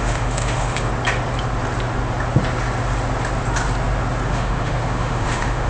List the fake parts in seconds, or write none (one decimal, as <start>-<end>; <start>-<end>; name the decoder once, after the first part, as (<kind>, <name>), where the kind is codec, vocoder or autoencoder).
0.0-0.9 (autoencoder, DAC-VAE); 4.3-5.7